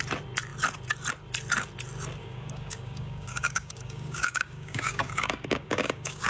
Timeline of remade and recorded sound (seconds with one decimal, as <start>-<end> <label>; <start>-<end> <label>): 0.0-2.2 recorded; 2.2-6.3 remade